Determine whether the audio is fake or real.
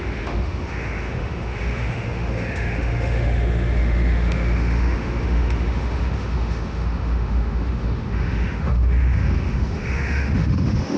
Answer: fake